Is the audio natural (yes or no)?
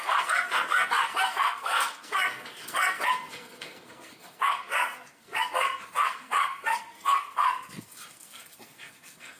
no